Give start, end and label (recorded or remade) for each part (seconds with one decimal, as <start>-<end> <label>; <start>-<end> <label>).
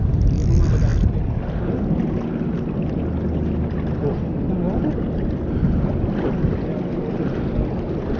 0.0-8.2 recorded